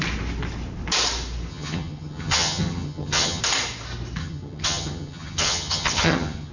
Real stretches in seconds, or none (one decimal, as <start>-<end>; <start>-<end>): 0.0-1.5; 3.4-4.2